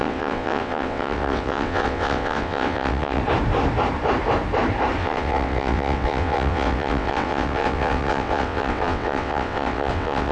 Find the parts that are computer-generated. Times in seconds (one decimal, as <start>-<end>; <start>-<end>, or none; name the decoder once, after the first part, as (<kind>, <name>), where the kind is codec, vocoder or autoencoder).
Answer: 0.0-3.2 (vocoder, WaveNeXt); 5.0-10.3